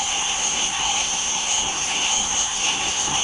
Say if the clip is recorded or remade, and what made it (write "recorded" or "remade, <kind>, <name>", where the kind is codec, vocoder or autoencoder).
remade, codec, SNAC